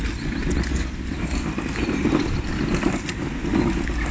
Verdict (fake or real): real